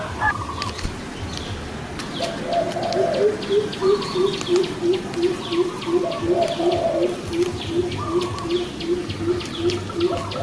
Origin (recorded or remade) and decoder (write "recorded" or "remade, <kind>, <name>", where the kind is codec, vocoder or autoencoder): recorded